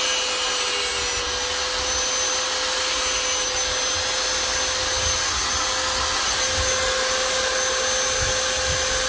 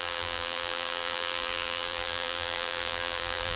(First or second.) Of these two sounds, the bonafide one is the first